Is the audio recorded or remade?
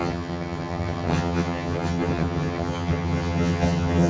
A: remade